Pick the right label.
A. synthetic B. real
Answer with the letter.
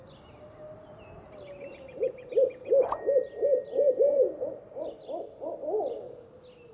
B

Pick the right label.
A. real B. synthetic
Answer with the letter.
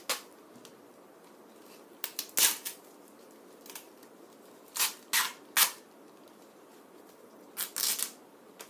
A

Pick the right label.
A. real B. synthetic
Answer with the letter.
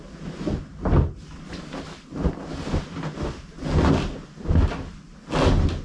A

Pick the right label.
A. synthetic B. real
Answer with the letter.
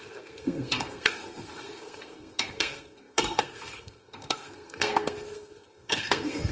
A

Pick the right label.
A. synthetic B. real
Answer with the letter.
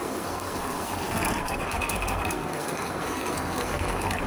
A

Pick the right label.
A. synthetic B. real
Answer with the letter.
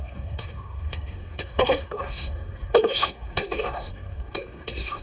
A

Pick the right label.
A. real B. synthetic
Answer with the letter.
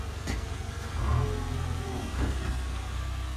B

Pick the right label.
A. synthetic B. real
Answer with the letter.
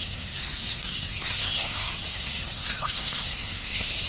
A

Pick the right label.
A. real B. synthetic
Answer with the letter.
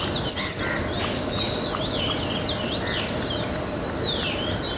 A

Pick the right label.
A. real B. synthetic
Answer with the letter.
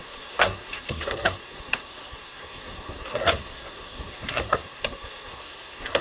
B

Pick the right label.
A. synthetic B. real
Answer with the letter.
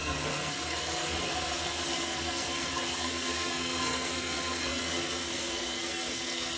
A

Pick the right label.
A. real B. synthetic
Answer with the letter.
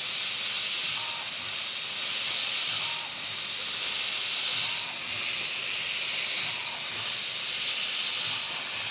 A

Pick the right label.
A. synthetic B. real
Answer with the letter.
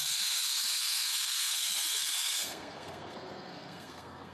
A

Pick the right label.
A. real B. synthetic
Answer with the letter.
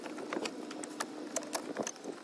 A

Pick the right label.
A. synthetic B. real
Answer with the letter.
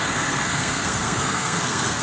A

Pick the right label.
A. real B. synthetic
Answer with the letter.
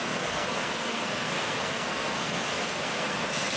B